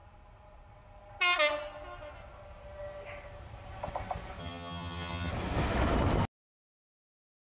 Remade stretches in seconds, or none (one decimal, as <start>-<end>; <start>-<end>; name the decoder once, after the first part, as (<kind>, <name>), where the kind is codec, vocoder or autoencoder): 4.4-5.3 (vocoder, HiFi-GAN)

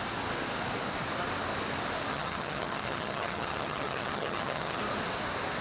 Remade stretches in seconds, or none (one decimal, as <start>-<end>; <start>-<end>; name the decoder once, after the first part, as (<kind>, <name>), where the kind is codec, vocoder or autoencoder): 2.1-4.8 (vocoder, HiFi-GAN)

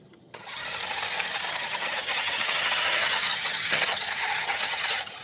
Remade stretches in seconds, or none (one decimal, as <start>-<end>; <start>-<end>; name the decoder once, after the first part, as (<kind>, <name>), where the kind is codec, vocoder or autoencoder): 0.0-0.6 (vocoder, HiFi-GAN); 1.5-5.2

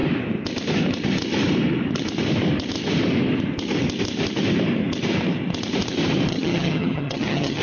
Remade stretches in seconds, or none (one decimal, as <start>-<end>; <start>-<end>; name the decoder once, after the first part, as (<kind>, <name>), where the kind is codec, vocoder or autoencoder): 6.3-7.6 (vocoder, HiFi-GAN)

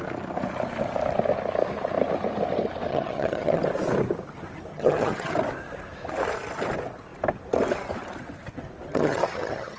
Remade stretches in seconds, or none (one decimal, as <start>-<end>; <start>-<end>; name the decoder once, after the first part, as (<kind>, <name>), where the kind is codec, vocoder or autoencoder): 2.9-3.6 (vocoder, HiFi-GAN); 4.7-5.3; 8.9-9.8

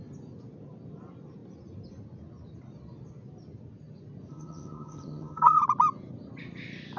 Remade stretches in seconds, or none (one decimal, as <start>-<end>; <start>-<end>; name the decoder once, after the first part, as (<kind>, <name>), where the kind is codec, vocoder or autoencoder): 4.3-5.6 (vocoder, HiFi-GAN)

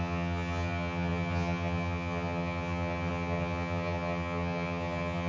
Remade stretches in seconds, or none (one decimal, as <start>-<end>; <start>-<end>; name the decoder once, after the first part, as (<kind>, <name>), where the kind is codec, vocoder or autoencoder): 0.0-5.3 (vocoder, HiFi-GAN)

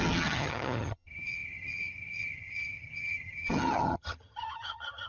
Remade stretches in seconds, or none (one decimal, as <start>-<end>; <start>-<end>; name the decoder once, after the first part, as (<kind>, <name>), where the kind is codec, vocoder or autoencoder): 0.0-5.1 (vocoder, HiFi-GAN)